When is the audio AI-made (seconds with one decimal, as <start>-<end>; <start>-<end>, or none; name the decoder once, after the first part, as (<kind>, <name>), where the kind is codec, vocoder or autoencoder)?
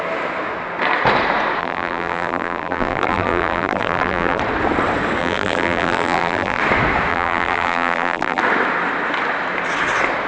1.6-4.4 (vocoder, BigVGAN v2); 5.2-6.6; 7.1-8.4